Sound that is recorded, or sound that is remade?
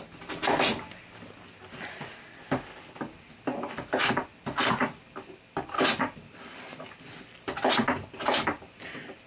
recorded